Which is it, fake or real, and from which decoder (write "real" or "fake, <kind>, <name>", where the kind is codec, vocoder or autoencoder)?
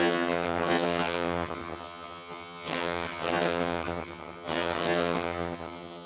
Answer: fake, vocoder, HiFi-GAN